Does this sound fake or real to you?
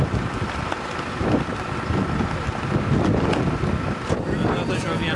real